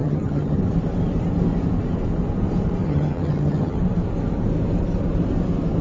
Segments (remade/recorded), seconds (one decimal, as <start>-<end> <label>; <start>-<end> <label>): 0.0-0.6 remade; 0.6-2.8 recorded; 2.8-3.8 remade; 3.8-5.8 recorded